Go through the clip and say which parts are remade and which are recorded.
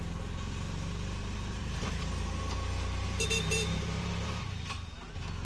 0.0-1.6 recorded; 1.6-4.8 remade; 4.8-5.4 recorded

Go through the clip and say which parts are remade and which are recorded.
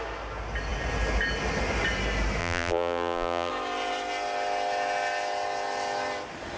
0.0-2.4 recorded; 2.4-3.5 remade; 3.5-6.6 recorded